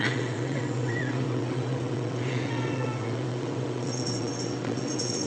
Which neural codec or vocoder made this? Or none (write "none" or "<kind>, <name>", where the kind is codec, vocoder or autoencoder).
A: vocoder, WaveNeXt